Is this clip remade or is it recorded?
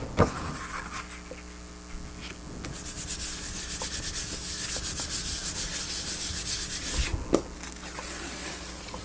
recorded